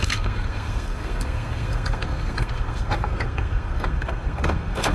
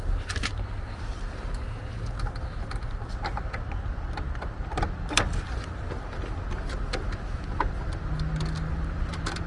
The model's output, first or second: first